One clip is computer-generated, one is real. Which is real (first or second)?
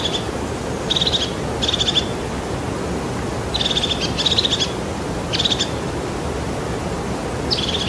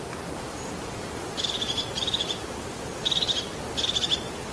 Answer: first